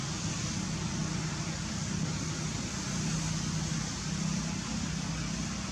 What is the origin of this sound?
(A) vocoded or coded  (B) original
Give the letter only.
B